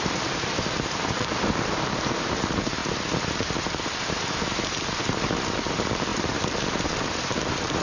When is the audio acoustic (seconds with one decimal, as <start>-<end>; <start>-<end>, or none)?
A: 2.8-5.0